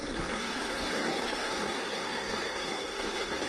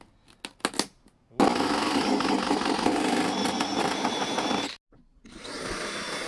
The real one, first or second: second